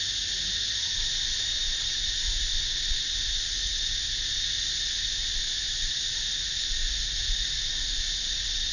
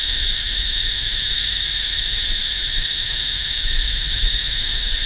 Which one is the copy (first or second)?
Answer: second